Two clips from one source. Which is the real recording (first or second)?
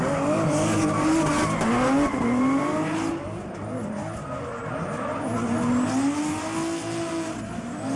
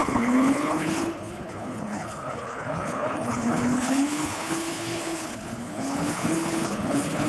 first